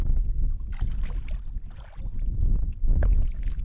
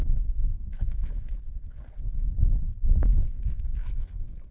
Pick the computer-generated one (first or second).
second